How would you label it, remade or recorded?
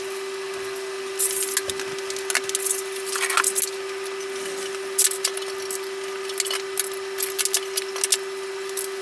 recorded